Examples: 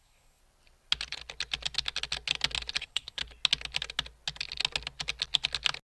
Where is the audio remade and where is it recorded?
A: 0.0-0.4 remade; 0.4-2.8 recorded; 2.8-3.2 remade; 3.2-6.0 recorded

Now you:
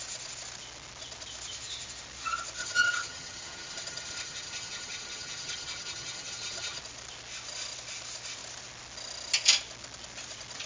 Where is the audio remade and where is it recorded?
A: 0.0-2.6 recorded; 2.6-6.8 remade; 6.8-10.7 recorded

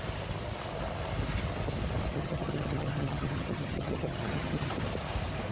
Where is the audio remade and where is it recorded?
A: 0.0-2.1 recorded; 2.1-4.7 remade; 4.7-5.5 recorded

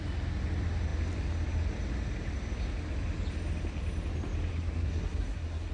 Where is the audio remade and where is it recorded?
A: 0.0-4.5 recorded; 4.5-5.7 remade

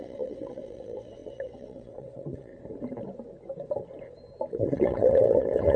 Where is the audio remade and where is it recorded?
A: 0.0-2.5 remade; 2.5-4.5 recorded; 4.5-5.8 remade

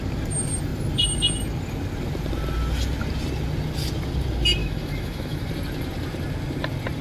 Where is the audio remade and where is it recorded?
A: 0.0-4.6 recorded; 4.6-5.5 remade; 5.5-7.0 recorded

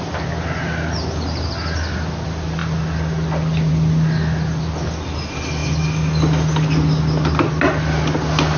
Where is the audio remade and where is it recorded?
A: 0.0-8.6 recorded

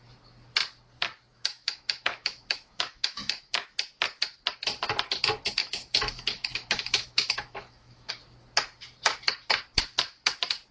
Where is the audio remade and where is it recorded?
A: 0.0-1.3 recorded; 1.3-3.7 remade; 3.7-5.6 recorded; 5.6-8.1 remade; 8.1-10.7 recorded